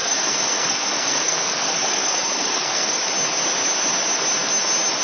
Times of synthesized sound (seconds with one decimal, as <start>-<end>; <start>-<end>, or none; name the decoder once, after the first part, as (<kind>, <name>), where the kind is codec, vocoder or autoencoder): 0.0-3.0 (codec, SNAC)